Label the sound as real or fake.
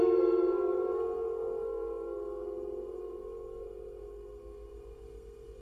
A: fake